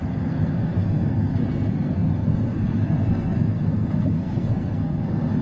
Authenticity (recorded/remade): remade